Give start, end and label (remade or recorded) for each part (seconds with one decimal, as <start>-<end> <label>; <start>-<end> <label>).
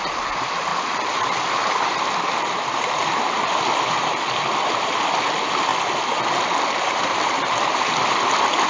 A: 0.0-0.7 recorded; 0.7-3.6 remade; 3.6-8.7 recorded